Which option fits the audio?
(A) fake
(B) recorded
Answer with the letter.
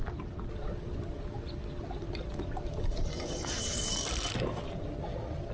B